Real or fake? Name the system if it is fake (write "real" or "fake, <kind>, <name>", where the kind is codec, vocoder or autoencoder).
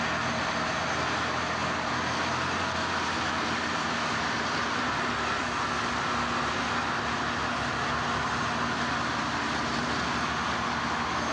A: real